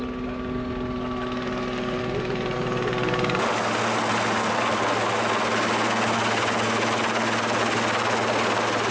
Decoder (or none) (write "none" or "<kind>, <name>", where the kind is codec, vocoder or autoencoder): none